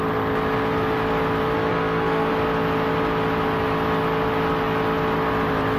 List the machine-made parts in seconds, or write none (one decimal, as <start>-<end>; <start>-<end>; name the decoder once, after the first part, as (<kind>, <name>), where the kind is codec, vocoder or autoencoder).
1.7-2.3 (codec, SNAC)